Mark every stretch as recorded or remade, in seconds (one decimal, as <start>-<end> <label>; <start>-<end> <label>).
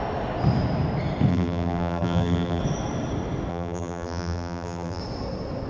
0.0-1.3 recorded; 1.3-2.6 remade; 2.6-3.5 recorded; 3.5-5.0 remade; 5.0-5.7 recorded